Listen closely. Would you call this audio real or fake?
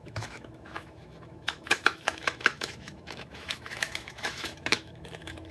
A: fake